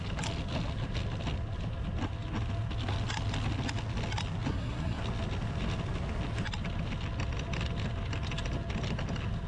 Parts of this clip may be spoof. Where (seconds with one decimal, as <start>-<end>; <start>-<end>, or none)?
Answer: 4.5-5.0